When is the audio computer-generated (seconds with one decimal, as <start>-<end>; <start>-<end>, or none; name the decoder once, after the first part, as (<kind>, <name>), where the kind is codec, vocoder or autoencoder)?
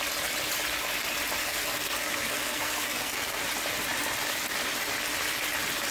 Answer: 1.4-3.4 (codec, SNAC)